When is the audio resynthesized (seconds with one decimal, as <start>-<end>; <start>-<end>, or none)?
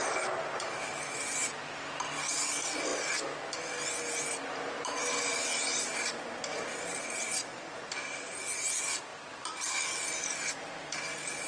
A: none